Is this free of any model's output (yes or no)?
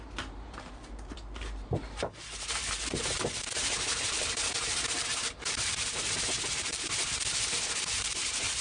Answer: no